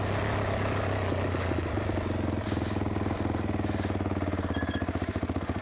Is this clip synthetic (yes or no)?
no